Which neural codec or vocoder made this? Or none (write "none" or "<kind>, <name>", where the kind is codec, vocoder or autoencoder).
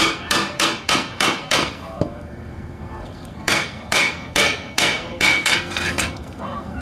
codec, SNAC